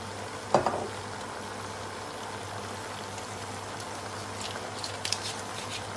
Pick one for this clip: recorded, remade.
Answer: recorded